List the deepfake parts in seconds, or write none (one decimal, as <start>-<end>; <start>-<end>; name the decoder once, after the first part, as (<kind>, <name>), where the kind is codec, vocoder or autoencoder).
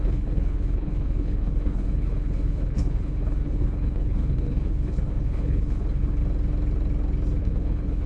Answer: 0.0-6.2 (codec, HILCodec); 7.4-8.1